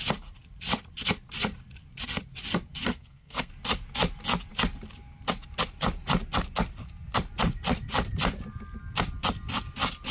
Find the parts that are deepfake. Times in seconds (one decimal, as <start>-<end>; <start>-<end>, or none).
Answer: 2.9-3.5